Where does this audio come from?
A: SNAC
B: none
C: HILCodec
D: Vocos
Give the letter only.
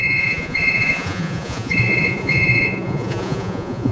D